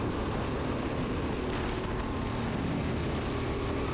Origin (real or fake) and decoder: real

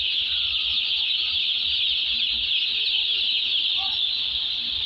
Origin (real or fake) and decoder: real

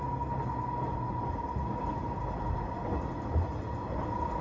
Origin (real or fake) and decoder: real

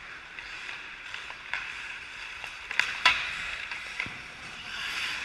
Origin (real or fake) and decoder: fake, vocoder, BigVGAN v2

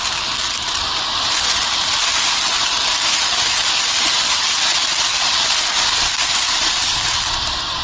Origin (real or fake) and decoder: real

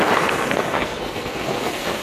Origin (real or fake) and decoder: fake, codec, SNAC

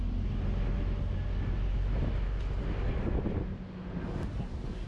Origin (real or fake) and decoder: real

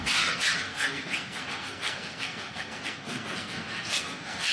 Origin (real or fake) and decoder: fake, codec, SNAC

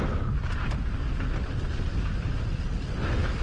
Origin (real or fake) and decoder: real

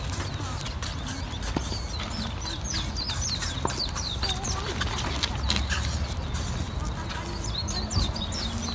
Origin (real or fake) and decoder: real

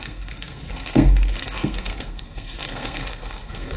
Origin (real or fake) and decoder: fake, codec, SNAC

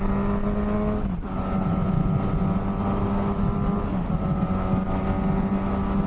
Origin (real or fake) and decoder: real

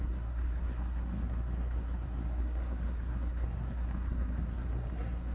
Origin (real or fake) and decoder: fake, codec, SNAC